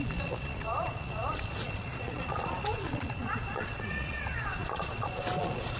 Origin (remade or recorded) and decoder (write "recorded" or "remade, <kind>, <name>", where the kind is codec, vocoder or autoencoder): remade, vocoder, Vocos